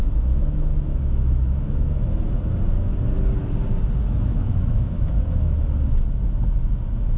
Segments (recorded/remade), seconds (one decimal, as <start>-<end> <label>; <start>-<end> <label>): 0.0-2.4 remade; 2.4-4.0 recorded; 4.0-5.7 remade; 5.7-7.2 recorded